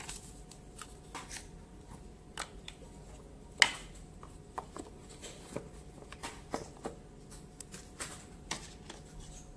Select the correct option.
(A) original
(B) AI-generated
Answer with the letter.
A